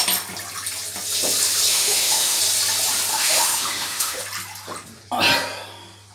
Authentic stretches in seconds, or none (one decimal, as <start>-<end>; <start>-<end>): 0.0-1.7; 2.4-3.1; 4.2-6.1